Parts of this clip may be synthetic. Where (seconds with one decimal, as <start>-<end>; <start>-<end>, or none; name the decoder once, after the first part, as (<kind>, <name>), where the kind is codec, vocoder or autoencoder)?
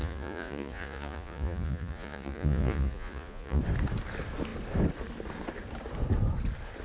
0.0-3.6 (vocoder, Vocos)